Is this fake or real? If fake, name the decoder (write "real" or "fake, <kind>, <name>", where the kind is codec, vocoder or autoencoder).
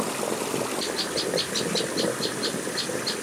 real